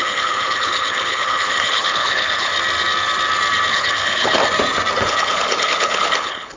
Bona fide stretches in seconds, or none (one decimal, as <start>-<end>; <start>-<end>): 2.5-3.7; 4.4-5.0